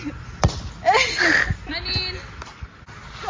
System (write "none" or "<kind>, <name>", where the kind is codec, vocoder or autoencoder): none